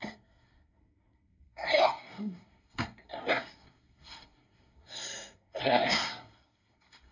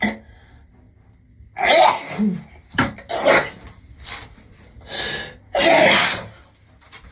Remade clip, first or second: first